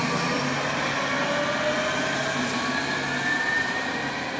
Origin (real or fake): real